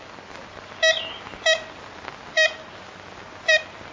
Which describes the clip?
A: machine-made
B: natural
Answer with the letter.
B